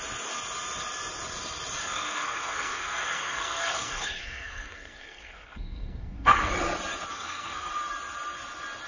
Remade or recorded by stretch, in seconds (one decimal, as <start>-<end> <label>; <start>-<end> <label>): 0.0-1.8 recorded; 1.8-6.5 remade; 6.5-7.1 recorded; 7.1-7.7 remade; 7.7-8.9 recorded

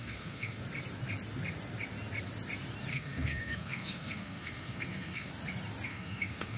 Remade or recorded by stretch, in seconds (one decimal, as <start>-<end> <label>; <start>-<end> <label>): 0.0-0.6 remade; 0.6-2.9 recorded; 2.9-5.3 remade; 5.3-5.9 recorded; 5.9-6.6 remade

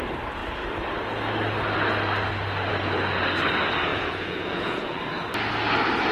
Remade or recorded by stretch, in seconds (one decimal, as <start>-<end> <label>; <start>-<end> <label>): 0.0-3.9 recorded; 3.9-5.0 remade; 5.0-6.1 recorded

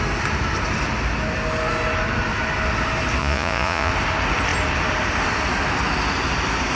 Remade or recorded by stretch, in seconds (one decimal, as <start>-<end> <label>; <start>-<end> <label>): 0.0-3.2 recorded; 3.2-3.9 remade; 3.9-6.8 recorded

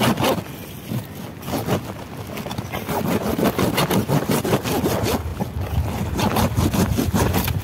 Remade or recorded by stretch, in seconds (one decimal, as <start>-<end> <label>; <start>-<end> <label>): 0.0-7.6 recorded

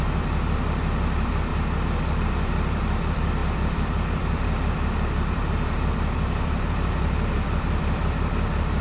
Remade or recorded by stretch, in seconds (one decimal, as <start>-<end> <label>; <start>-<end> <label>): 0.0-1.5 remade; 1.5-2.2 recorded; 2.2-8.8 remade

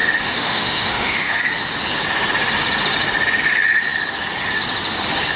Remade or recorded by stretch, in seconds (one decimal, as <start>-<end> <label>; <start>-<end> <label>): 0.0-1.4 remade; 1.4-5.4 recorded